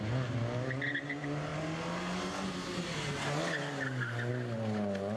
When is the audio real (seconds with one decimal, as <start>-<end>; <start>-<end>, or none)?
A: 0.0-5.2